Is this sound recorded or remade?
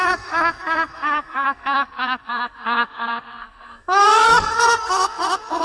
remade